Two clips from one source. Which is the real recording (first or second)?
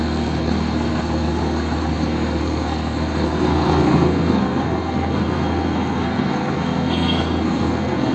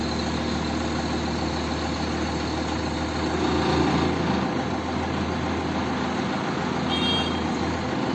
second